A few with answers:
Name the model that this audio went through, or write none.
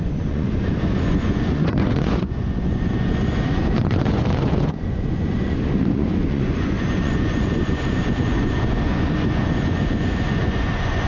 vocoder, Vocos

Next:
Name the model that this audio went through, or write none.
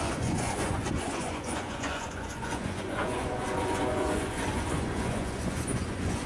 vocoder, Vocos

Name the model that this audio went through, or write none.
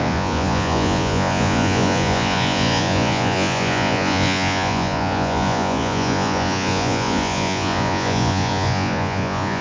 vocoder, Vocos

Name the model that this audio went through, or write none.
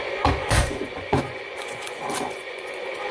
vocoder, Vocos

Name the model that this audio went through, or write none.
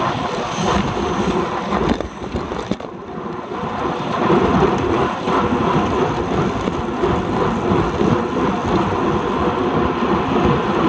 none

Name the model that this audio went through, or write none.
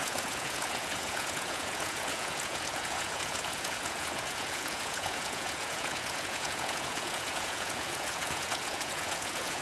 vocoder, Vocos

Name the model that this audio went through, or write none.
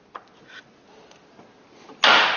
none